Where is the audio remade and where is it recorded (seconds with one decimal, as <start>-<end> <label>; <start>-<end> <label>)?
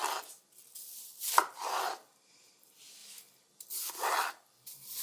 0.0-5.0 recorded